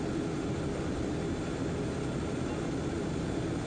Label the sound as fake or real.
real